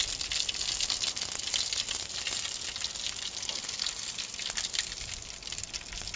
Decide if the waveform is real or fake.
real